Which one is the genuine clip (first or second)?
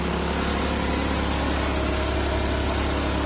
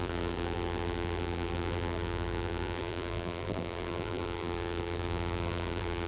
first